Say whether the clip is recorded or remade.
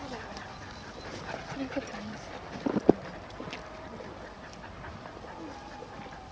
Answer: recorded